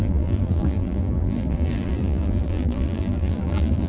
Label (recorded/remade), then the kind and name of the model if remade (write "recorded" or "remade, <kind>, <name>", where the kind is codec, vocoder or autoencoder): remade, vocoder, BigVGAN v2